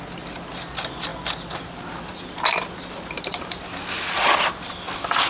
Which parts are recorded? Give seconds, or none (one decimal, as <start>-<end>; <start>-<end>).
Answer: 0.0-5.3